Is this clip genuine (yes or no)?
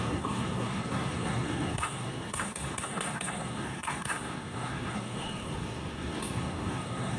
no